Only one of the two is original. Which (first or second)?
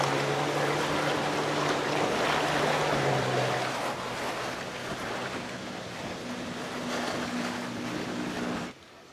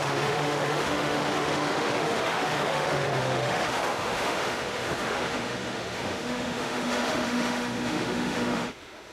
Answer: first